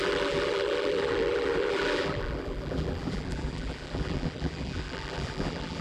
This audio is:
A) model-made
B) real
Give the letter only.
A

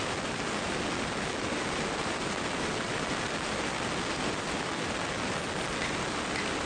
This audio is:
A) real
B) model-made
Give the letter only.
A